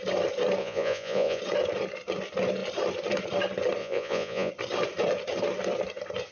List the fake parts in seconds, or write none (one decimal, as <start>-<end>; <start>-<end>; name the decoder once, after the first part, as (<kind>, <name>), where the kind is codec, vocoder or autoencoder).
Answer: 0.6-1.4 (vocoder, Vocos); 3.8-4.5

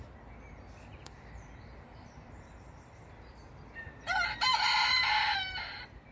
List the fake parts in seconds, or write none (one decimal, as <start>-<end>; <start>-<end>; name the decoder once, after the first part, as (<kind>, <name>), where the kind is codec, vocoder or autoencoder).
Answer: 0.9-3.3 (vocoder, BigVGAN v2)

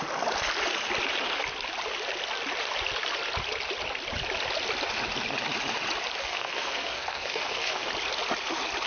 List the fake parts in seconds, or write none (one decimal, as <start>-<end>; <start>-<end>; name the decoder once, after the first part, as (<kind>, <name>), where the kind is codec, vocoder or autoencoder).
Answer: 6.2-7.9 (codec, SNAC)

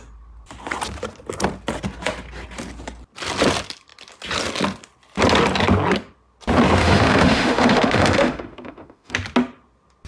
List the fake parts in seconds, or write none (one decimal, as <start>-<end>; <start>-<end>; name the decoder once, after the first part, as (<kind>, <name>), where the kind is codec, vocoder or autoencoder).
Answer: 6.8-9.1 (autoencoder, DAC-VAE)

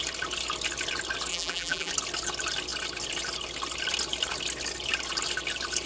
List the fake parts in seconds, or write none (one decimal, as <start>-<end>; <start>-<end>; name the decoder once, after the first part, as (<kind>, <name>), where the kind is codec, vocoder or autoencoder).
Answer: 1.3-1.9 (vocoder, BigVGAN v2)

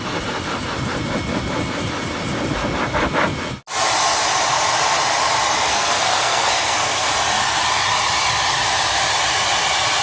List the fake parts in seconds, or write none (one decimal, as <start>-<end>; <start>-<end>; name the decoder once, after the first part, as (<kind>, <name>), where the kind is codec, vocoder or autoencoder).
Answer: 5.7-7.1 (codec, SNAC)